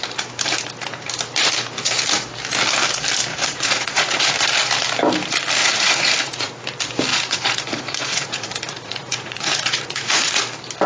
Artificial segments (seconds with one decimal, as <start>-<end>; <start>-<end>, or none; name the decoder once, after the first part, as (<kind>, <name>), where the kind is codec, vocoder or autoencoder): 3.3-4.3 (vocoder, Vocos); 5.6-6.5; 7.1-10.4